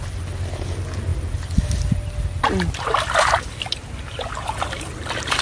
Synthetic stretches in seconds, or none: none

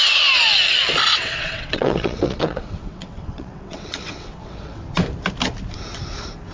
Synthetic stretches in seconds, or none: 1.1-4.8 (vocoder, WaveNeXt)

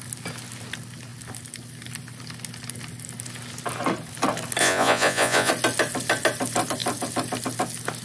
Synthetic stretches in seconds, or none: 4.6-5.5 (vocoder, Vocos)